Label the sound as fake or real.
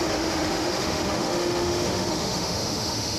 fake